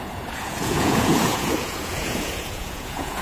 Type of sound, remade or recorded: remade